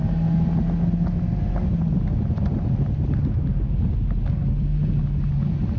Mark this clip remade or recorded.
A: recorded